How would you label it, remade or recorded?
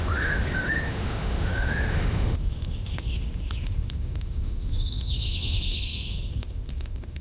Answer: remade